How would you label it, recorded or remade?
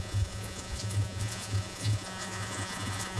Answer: remade